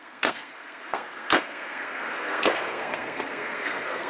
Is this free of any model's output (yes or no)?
no